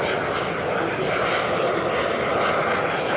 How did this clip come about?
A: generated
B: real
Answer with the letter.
B